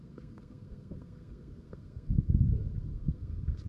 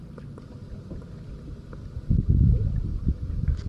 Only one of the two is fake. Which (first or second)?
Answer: first